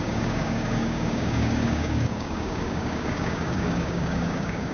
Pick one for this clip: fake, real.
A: fake